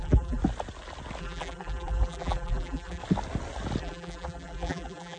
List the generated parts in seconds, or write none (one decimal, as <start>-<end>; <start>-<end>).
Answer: 0.0-0.4; 1.2-3.0; 3.8-5.2

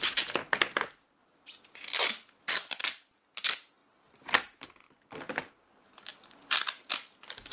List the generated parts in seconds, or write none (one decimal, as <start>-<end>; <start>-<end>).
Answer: 1.2-2.0; 3.8-5.5

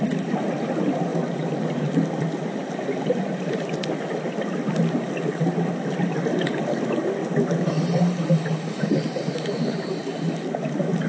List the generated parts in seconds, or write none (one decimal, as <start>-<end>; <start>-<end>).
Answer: 1.1-4.5